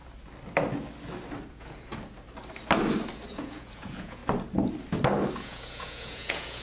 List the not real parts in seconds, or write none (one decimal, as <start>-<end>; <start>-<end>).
1.5-1.9; 3.3-4.2; 5.4-6.6